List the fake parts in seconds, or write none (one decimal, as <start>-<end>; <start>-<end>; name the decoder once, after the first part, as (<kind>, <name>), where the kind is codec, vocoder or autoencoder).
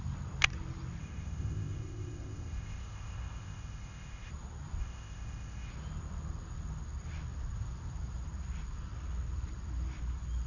1.0-4.3 (codec, ZipCodec); 4.8-5.7